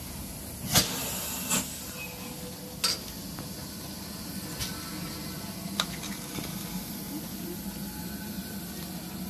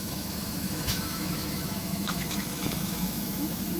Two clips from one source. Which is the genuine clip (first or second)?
first